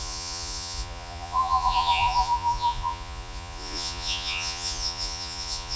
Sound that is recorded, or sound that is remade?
remade